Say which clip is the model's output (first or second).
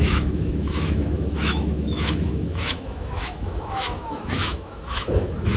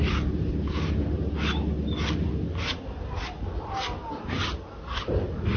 first